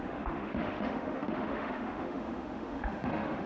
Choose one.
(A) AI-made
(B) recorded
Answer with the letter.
A